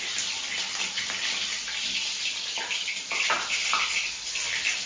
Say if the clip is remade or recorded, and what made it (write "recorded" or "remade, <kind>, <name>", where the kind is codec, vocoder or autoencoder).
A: recorded